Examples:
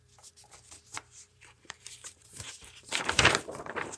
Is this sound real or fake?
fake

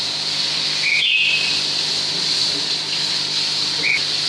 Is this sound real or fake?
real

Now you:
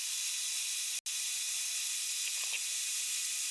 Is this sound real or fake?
real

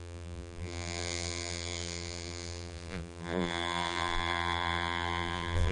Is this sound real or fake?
fake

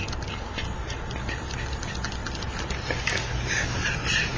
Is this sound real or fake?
real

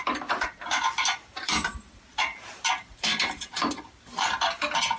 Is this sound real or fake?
fake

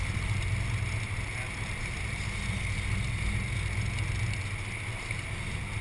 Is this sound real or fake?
real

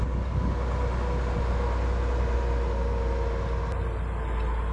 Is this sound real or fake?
real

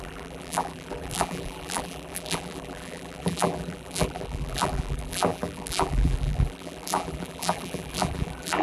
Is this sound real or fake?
fake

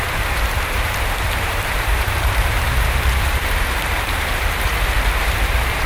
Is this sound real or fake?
fake